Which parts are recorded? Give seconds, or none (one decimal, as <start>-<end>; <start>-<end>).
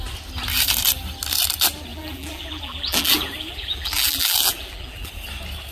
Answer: 0.0-1.9; 5.1-5.7